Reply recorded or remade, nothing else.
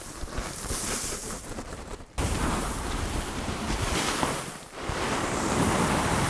remade